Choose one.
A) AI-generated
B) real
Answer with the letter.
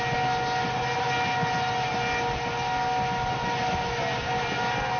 B